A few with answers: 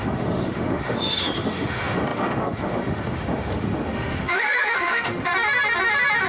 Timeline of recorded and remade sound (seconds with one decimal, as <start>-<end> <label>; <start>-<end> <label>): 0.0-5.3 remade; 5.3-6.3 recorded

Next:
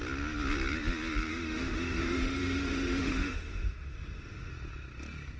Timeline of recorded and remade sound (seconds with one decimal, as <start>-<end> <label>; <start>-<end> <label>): 0.0-1.3 recorded; 1.3-4.5 remade; 4.5-5.4 recorded

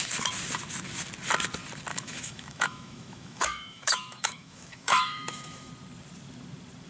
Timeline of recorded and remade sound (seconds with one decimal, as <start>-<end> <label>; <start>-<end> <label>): 0.0-1.9 recorded; 1.9-5.7 remade; 5.7-6.9 recorded